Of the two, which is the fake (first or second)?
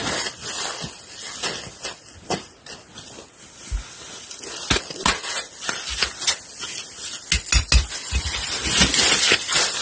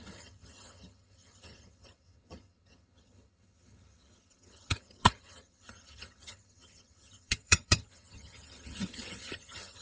second